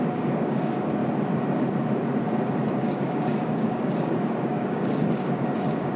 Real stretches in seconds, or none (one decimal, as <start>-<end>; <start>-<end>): 1.0-2.7